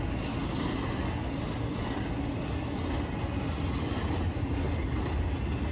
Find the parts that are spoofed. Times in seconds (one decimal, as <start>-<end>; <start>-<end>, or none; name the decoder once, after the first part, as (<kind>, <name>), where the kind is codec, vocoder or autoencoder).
none